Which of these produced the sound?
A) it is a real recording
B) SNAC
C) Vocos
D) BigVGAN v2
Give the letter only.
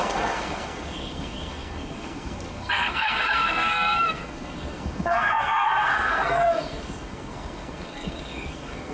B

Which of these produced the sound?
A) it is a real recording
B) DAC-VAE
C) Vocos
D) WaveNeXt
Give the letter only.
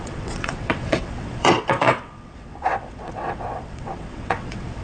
D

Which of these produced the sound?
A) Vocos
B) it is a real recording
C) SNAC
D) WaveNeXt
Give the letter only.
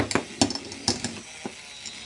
B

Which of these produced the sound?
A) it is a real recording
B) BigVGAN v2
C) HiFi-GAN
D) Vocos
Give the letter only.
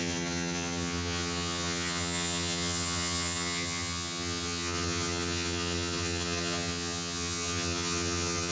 C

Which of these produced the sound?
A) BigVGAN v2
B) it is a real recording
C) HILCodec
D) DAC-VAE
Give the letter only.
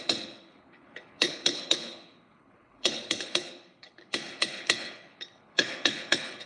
C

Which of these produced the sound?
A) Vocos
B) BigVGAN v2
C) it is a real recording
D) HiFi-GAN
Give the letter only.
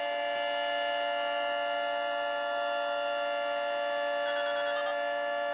C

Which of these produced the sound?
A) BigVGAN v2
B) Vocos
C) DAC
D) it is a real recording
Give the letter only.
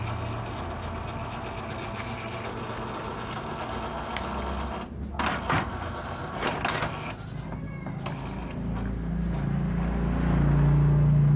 D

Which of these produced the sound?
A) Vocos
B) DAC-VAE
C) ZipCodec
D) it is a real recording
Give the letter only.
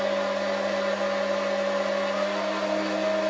D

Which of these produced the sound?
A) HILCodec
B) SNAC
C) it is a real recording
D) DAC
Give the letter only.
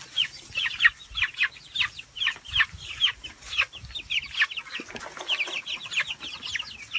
C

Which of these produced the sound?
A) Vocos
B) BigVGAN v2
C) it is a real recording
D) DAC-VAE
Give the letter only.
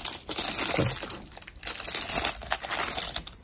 C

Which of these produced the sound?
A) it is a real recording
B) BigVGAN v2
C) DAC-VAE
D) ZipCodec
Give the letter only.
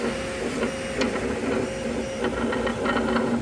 A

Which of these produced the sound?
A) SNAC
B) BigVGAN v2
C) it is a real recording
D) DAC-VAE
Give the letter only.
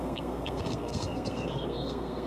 A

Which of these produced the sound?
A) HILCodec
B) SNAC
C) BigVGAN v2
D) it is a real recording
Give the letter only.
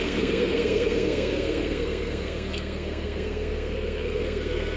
B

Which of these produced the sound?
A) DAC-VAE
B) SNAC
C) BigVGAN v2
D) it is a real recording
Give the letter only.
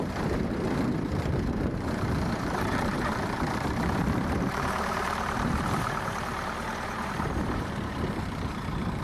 C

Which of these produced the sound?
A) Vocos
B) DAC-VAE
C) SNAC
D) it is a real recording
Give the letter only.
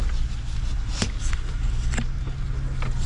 D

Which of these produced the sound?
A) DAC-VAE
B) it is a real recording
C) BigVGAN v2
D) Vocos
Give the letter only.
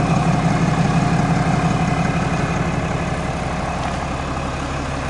B